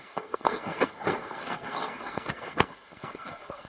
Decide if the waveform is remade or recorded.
remade